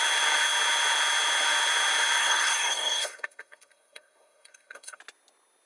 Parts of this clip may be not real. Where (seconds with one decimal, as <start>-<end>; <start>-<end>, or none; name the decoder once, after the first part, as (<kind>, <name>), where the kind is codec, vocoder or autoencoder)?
2.2-5.0 (codec, SNAC)